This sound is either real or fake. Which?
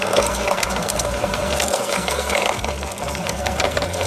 fake